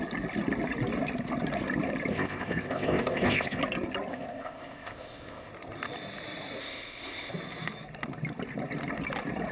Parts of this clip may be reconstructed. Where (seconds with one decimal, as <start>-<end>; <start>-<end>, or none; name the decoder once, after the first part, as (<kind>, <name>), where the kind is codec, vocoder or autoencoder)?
2.1-3.6 (codec, ZipCodec); 4.1-5.5; 6.6-7.3